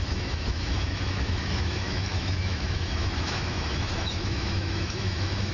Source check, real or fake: fake